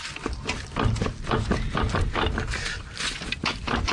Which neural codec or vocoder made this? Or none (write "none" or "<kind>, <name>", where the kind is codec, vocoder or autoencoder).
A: none